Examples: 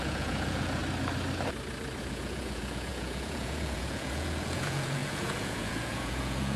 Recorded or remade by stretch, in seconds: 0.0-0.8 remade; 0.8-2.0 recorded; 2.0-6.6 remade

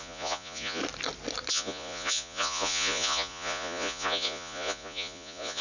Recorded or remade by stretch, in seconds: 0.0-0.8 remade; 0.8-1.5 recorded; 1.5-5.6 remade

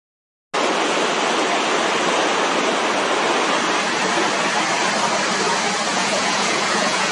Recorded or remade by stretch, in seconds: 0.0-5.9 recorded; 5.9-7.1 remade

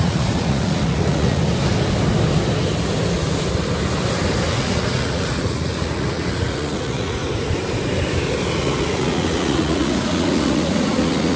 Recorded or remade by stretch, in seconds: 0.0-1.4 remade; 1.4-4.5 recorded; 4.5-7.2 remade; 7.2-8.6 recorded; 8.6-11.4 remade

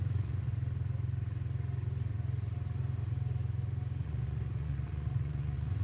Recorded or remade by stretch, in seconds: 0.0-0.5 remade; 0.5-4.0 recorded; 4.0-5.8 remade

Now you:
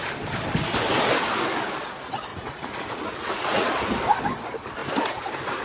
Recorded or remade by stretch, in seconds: 0.0-2.3 recorded; 2.3-3.7 remade; 3.7-5.6 recorded

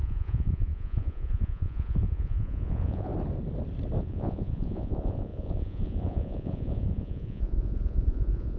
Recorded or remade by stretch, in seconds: 0.0-3.1 remade; 3.1-4.0 recorded; 4.0-8.6 remade

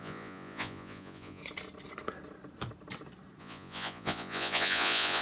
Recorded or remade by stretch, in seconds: 0.0-1.4 remade; 1.4-3.4 recorded; 3.4-5.2 remade